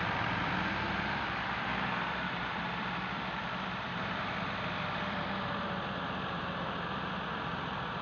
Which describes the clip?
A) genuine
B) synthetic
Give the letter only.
B